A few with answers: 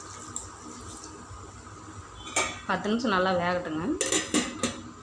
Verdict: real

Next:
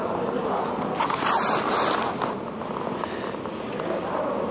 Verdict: real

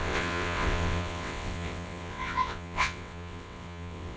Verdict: fake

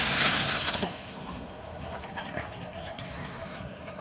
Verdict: fake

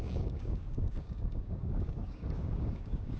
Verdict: fake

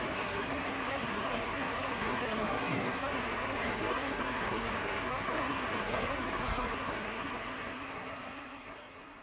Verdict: fake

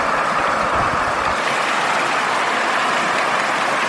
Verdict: real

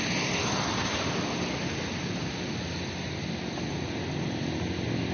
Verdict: real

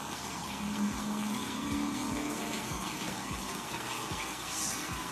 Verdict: fake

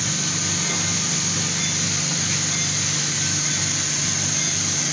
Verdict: real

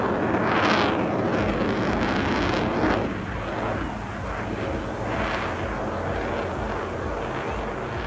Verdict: real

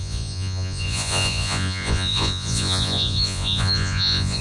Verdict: fake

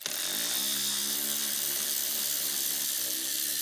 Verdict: real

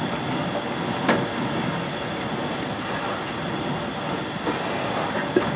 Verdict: real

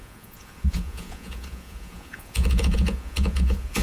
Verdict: fake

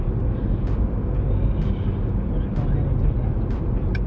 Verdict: real